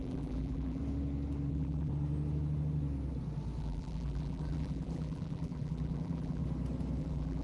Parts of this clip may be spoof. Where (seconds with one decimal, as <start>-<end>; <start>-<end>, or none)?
0.0-0.8; 1.5-1.9; 3.6-6.4; 7.0-7.4